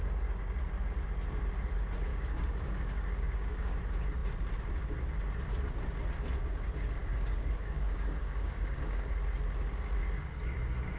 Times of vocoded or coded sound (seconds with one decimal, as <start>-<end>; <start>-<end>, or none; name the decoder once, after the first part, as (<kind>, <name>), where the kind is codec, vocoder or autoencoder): 2.1-3.8 (codec, DAC); 7.0-9.1